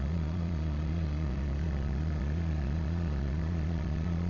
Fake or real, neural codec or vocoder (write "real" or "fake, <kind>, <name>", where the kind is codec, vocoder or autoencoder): fake, vocoder, Vocos